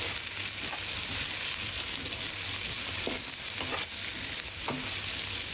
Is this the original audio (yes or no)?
yes